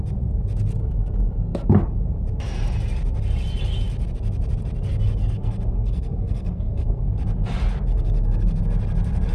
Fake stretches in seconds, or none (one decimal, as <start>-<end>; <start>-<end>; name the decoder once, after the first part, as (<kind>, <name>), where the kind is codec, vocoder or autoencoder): 5.2-7.0 (codec, SNAC); 7.9-8.6